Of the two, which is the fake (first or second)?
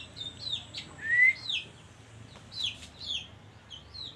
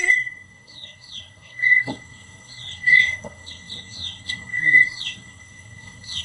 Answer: second